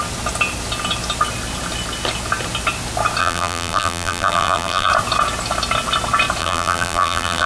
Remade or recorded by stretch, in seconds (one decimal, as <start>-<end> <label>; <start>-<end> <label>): 0.0-3.2 recorded; 3.2-4.9 remade; 4.9-6.4 recorded; 6.4-7.5 remade